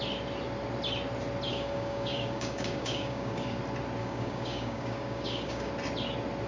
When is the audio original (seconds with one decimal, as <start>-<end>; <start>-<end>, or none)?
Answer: 0.0-1.5; 3.6-4.0; 5.7-6.5